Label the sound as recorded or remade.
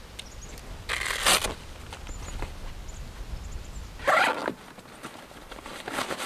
recorded